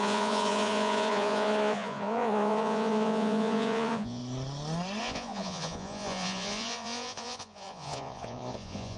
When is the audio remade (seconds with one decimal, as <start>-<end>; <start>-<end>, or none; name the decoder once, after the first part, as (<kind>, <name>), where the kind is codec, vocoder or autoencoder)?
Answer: 0.0-4.2 (vocoder, Vocos); 5.0-9.0